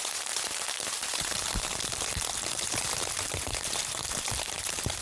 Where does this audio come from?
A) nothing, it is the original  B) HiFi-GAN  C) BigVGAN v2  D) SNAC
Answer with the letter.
C